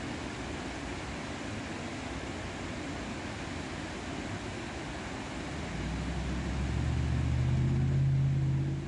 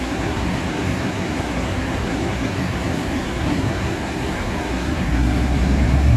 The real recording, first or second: first